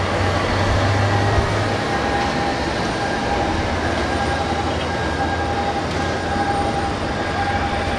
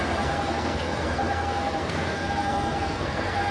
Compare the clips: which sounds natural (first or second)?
first